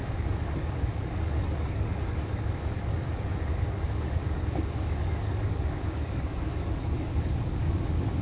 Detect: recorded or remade remade